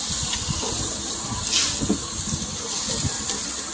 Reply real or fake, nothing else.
real